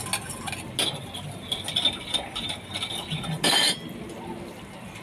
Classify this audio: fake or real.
real